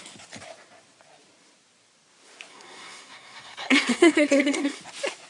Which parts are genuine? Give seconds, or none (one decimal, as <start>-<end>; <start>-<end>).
0.0-2.5; 4.8-5.3